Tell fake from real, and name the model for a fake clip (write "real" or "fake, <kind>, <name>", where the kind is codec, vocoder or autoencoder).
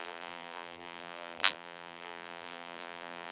fake, vocoder, BigVGAN v2